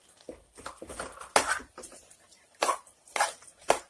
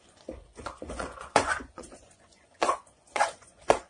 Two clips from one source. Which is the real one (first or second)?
first